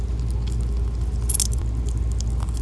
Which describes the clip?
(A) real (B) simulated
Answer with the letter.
A